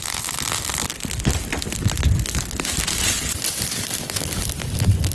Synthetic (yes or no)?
no